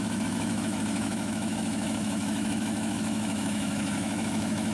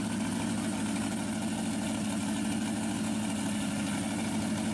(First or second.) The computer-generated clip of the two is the first